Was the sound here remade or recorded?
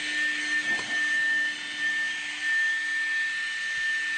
recorded